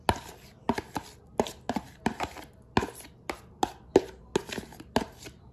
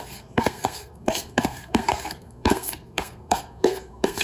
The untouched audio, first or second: first